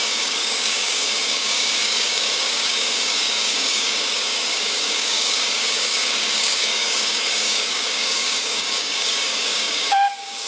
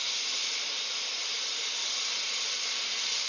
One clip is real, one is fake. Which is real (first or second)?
second